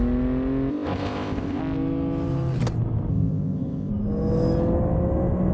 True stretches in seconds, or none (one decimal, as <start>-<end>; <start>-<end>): 0.0-0.7; 1.6-3.1; 3.9-5.5